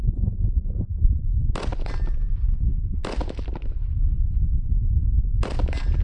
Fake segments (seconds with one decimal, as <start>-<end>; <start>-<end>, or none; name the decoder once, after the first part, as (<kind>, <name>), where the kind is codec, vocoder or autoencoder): 0.0-1.1 (vocoder, Vocos)